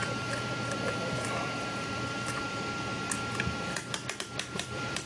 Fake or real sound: fake